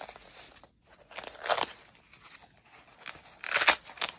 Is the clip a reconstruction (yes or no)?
no